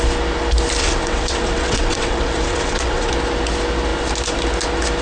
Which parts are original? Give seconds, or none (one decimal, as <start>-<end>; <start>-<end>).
0.0-0.8; 3.1-5.0